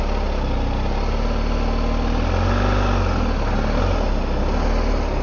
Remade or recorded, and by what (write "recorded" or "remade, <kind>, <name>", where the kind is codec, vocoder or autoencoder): recorded